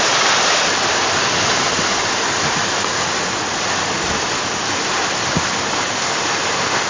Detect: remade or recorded recorded